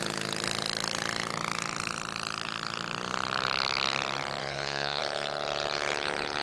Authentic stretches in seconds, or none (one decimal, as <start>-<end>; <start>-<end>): 0.0-4.4; 5.0-6.4